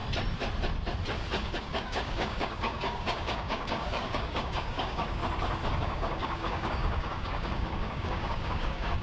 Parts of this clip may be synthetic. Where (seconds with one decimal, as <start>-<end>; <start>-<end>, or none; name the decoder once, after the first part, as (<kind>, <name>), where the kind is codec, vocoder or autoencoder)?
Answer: 1.6-5.2 (codec, DAC); 5.8-9.0